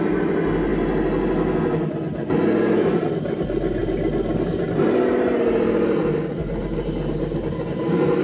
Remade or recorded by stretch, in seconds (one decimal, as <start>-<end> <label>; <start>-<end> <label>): 0.0-8.2 recorded